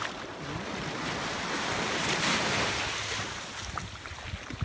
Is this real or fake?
real